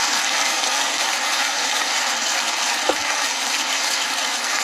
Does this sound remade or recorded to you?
remade